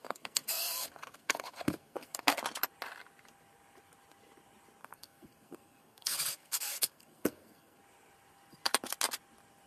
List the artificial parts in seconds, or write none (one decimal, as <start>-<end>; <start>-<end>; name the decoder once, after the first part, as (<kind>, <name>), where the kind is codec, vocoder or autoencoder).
0.0-2.4 (codec, SNAC); 4.8-7.8

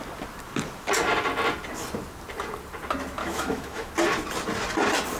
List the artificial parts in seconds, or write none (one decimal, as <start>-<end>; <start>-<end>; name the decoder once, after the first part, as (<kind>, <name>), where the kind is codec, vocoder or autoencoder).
3.2-3.9 (autoencoder, DAC-VAE)

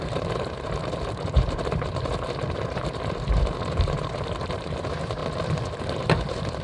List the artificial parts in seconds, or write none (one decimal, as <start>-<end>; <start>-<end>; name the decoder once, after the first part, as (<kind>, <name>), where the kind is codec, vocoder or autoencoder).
0.0-5.2 (vocoder, BigVGAN v2); 5.8-6.6

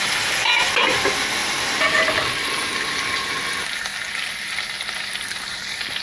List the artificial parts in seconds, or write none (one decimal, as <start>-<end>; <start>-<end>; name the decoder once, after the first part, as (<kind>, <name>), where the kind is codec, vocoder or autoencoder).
none

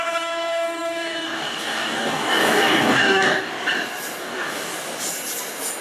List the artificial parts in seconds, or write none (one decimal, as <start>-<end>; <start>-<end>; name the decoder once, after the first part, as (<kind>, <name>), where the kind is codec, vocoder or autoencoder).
0.0-3.5 (codec, DAC); 4.2-4.7

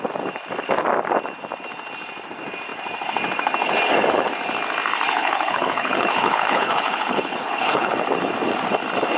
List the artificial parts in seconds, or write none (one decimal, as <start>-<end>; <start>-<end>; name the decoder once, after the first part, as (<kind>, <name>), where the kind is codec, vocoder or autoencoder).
5.2-7.9 (codec, HILCodec)